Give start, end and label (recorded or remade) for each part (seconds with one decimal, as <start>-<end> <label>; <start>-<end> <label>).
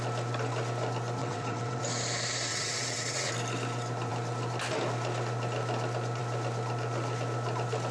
0.0-1.2 recorded; 1.2-1.8 remade; 1.8-2.5 recorded; 2.5-3.3 remade; 3.3-7.9 recorded